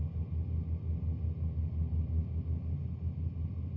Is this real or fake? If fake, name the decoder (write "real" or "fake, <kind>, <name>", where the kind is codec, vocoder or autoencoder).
real